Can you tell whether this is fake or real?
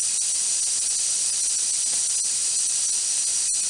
real